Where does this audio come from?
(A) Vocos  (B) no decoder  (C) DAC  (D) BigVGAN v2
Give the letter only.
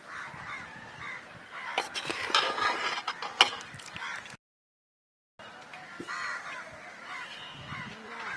B